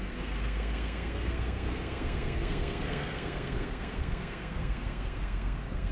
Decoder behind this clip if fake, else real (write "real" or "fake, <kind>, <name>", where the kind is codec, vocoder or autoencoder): fake, codec, SNAC